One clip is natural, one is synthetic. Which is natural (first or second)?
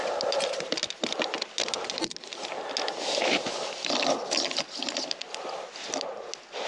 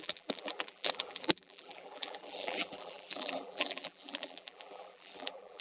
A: first